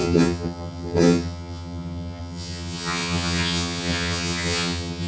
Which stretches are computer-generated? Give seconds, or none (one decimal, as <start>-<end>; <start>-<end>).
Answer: 0.0-5.1